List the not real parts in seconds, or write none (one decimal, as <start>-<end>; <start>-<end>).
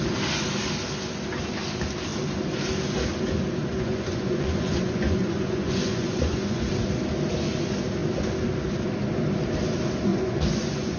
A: 3.7-6.7; 10.1-11.0